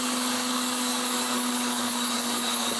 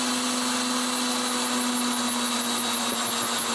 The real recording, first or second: second